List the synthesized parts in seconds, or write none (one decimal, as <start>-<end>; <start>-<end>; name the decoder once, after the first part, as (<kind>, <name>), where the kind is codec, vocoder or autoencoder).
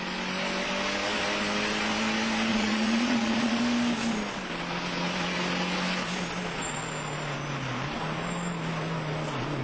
2.5-3.6 (vocoder, Vocos)